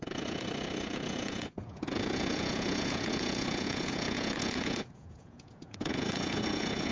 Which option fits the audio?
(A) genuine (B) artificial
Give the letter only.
B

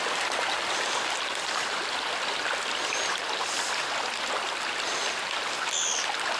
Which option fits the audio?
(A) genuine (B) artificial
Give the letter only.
A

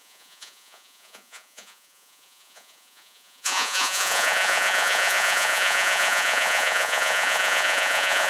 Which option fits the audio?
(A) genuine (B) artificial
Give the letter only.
B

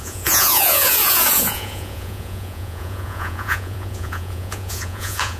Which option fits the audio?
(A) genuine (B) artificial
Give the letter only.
B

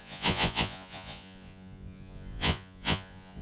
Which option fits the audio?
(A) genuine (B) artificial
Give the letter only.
B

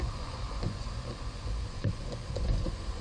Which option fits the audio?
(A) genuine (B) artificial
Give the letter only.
B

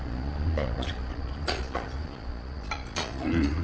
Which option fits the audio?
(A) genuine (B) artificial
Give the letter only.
B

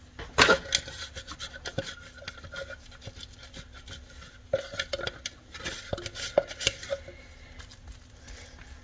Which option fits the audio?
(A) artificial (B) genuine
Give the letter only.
B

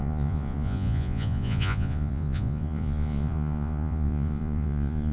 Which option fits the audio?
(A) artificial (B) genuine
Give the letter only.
A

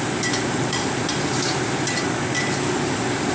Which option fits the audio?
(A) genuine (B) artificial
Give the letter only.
A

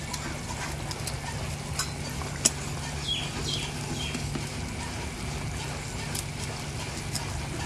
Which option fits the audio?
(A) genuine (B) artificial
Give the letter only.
A